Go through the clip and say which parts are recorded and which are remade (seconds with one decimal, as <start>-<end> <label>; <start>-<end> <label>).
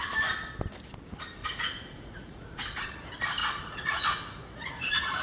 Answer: 0.0-1.4 recorded; 1.4-2.8 remade; 2.8-3.4 recorded; 3.4-5.2 remade